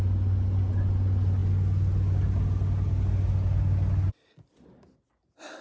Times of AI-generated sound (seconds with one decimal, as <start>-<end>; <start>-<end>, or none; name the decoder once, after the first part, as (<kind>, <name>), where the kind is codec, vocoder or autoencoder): none